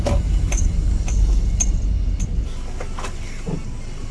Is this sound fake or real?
real